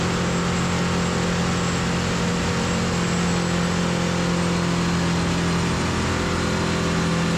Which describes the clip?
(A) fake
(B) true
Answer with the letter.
B